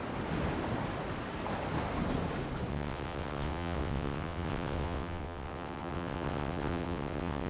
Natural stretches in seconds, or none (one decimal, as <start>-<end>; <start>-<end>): 0.0-2.7